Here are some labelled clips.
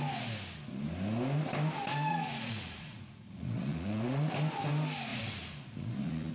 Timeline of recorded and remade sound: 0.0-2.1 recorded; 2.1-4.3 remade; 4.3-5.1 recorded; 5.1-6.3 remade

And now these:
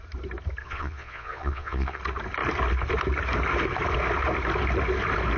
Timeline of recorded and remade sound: 0.0-0.6 recorded; 0.6-2.0 remade; 2.0-5.4 recorded

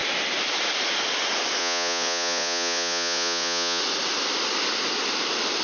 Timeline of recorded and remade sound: 0.0-1.6 recorded; 1.6-3.8 remade; 3.8-5.6 recorded

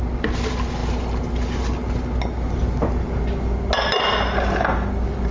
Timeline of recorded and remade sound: 0.0-5.3 recorded

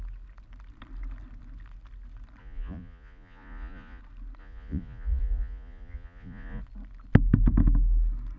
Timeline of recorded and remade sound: 0.0-2.4 recorded; 2.4-4.0 remade; 4.0-4.4 recorded; 4.4-6.6 remade; 6.6-8.4 recorded

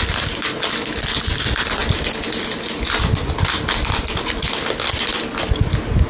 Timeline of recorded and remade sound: 0.0-6.1 recorded

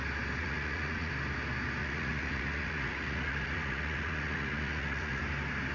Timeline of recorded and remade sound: 0.0-0.4 recorded; 0.4-1.1 remade; 1.1-1.8 recorded; 1.8-5.2 remade; 5.2-5.7 recorded

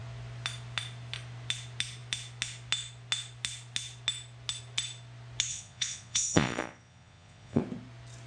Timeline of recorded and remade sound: 0.0-5.5 recorded; 5.5-7.6 remade; 7.6-8.3 recorded